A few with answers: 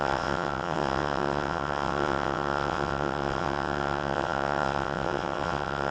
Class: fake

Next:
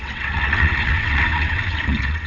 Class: fake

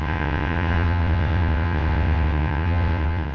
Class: fake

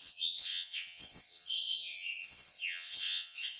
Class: fake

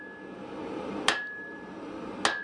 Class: real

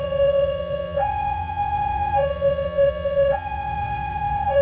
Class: fake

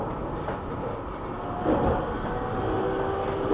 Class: real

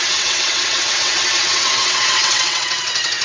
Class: fake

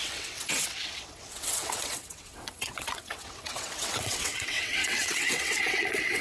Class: fake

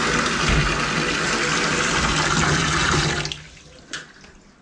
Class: real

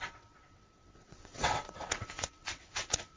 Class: fake